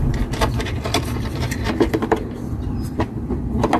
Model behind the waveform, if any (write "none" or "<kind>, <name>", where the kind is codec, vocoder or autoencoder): vocoder, BigVGAN v2